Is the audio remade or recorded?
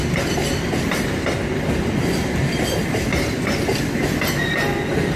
recorded